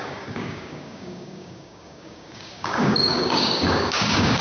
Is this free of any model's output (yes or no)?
no